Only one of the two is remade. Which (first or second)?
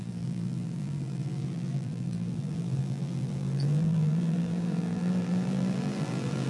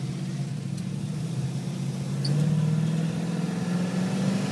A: first